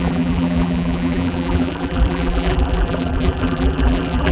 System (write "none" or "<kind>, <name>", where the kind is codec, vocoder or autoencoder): vocoder, BigVGAN v2